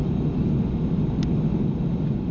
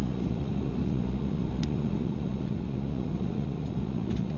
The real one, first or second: first